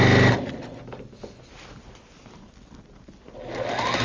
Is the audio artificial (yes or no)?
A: no